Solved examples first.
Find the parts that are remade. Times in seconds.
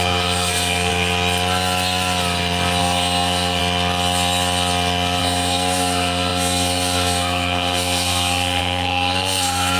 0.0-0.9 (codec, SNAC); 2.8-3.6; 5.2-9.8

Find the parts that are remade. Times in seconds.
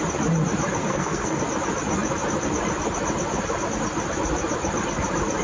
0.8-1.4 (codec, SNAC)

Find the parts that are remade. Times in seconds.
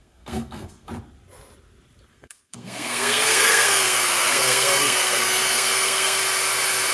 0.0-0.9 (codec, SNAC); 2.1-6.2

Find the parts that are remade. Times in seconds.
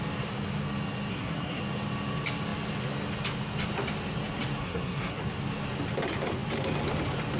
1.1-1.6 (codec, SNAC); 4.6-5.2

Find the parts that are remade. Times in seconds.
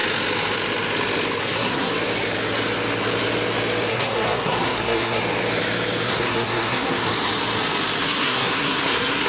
1.4-1.9 (codec, SNAC); 3.9-5.2; 6.0-7.1; 8.0-9.3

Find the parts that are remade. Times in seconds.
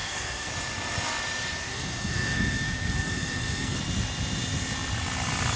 0.0-0.5 (codec, SNAC); 1.7-3.8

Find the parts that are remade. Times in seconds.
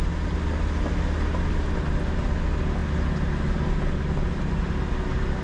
none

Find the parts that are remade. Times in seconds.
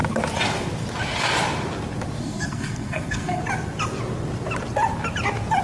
2.2-3.4 (codec, SNAC)